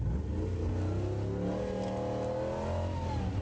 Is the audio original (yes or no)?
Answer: yes